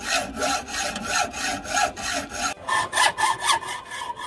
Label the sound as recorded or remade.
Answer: recorded